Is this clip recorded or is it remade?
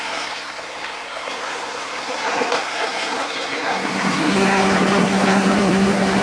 remade